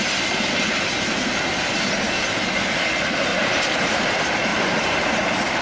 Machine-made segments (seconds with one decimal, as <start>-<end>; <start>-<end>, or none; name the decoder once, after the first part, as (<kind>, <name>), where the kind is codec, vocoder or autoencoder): 3.3-4.1 (vocoder, BigVGAN v2); 4.5-5.1

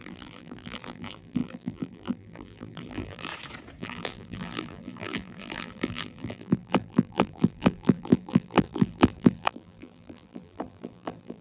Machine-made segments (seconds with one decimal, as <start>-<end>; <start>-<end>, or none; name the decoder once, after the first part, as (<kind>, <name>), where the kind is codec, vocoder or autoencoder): 0.0-3.3 (vocoder, BigVGAN v2); 3.8-11.4

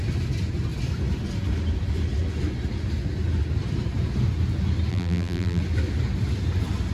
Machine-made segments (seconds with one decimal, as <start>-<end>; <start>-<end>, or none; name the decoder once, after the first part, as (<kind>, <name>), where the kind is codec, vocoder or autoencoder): 4.9-5.6 (vocoder, BigVGAN v2)

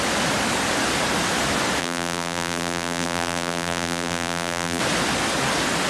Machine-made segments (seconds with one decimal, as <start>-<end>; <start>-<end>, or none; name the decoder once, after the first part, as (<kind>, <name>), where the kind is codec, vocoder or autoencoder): 1.8-4.8 (vocoder, BigVGAN v2)

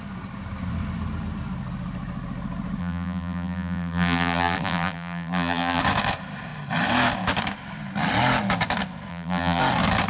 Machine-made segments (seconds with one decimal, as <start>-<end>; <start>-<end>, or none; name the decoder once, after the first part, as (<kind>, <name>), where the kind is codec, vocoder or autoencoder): 2.8-5.8 (vocoder, BigVGAN v2); 9.1-9.6

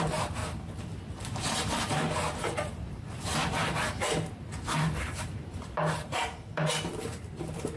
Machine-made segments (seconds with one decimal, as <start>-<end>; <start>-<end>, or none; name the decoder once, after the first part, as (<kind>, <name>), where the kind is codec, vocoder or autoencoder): 0.0-0.4 (vocoder, BigVGAN v2); 1.0-7.8